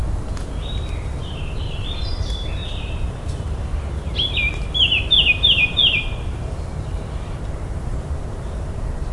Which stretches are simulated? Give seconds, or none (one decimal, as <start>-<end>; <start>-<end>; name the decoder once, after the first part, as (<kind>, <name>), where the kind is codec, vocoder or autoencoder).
1.2-3.7 (vocoder, BigVGAN v2); 5.3-9.1